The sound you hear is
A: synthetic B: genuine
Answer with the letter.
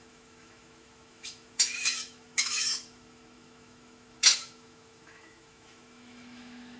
A